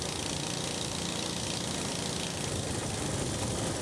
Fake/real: real